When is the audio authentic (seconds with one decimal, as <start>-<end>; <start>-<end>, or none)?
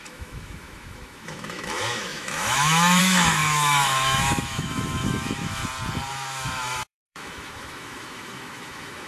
5.6-6.1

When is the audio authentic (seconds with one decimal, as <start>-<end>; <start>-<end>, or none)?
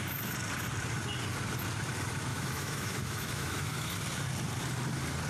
0.0-2.3; 3.9-5.3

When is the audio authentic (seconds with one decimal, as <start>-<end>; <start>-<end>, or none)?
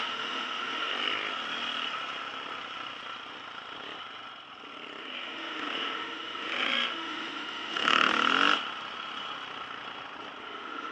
0.9-5.0; 8.1-10.4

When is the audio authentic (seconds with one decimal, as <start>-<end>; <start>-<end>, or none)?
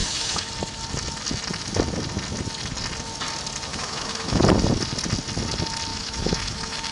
0.5-3.7; 4.4-5.9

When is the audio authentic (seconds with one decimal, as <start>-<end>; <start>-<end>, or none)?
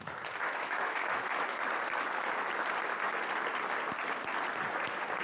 0.0-0.4; 1.6-5.2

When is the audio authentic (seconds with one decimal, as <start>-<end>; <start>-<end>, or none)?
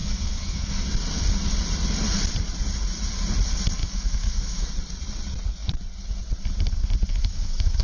0.7-3.8; 4.7-7.1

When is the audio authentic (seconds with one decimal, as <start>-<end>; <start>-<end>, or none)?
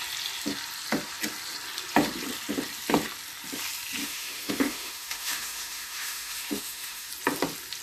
0.0-4.0; 7.1-7.8